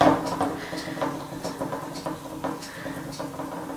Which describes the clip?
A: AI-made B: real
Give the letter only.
B